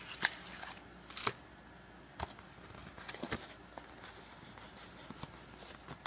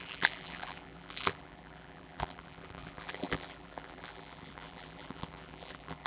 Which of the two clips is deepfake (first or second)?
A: second